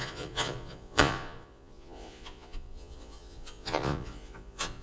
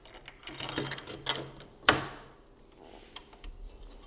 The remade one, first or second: first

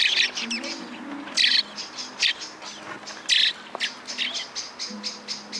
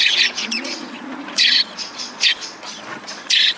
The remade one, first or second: second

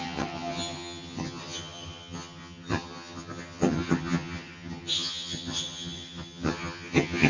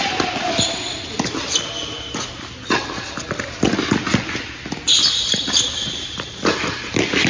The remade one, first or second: first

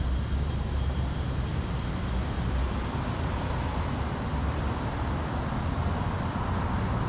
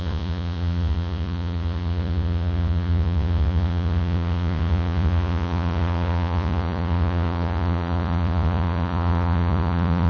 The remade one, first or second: second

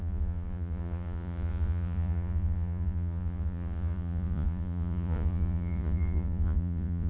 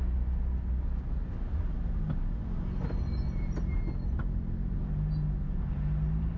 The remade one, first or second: first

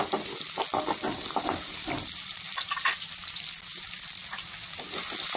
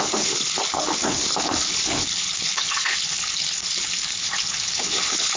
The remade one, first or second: second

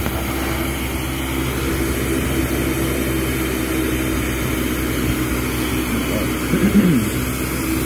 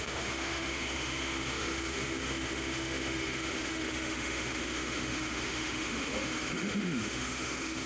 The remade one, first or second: second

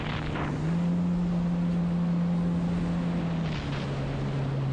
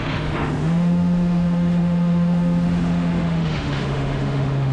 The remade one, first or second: second